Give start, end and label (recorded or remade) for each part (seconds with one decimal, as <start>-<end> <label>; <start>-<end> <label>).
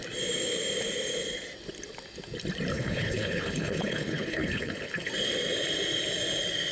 0.0-2.7 recorded; 2.7-5.1 remade; 5.1-6.7 recorded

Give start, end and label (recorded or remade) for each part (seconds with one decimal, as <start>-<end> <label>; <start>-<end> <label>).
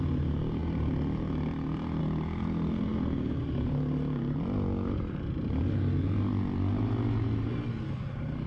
0.0-8.5 recorded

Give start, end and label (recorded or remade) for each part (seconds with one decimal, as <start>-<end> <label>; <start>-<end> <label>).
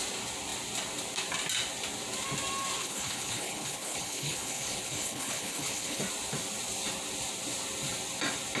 0.0-2.8 recorded; 2.8-6.0 remade; 6.0-8.6 recorded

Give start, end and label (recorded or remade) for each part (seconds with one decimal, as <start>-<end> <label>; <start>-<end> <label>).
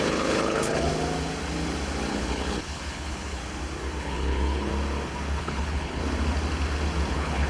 0.0-0.9 remade; 0.9-2.1 recorded; 2.1-3.4 remade; 3.4-4.0 recorded; 4.0-4.7 remade; 4.7-5.4 recorded; 5.4-6.0 remade; 6.0-7.1 recorded; 7.1-7.5 remade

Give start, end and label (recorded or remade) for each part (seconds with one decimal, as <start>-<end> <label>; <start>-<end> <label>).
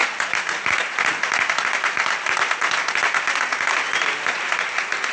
0.0-5.1 recorded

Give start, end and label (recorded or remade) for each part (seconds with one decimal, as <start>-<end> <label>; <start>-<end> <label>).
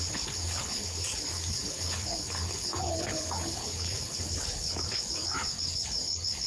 0.0-6.5 remade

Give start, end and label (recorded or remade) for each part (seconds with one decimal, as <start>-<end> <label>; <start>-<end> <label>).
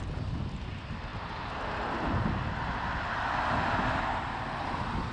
0.0-5.1 recorded